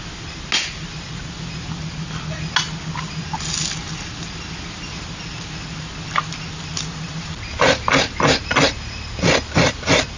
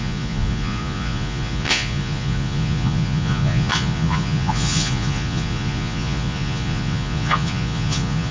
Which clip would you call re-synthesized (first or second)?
second